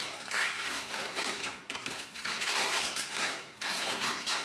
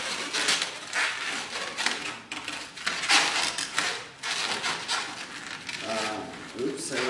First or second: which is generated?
first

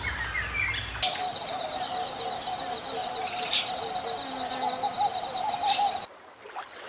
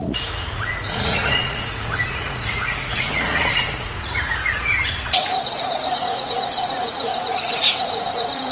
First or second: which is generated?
second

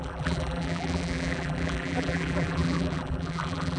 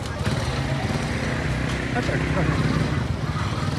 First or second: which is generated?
first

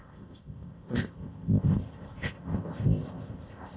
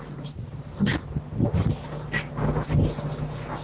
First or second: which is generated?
first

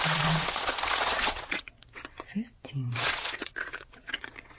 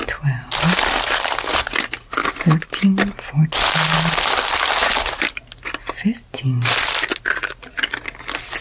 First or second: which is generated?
first